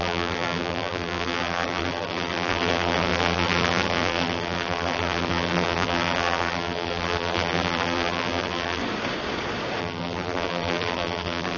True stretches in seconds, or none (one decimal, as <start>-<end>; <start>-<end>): 8.8-9.8